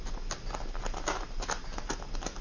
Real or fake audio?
real